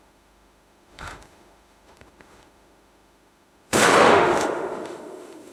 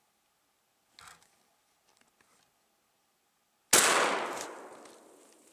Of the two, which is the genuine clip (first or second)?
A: second